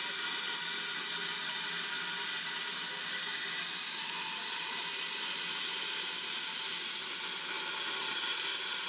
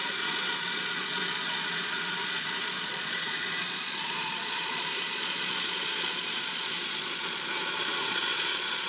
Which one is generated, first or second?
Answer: second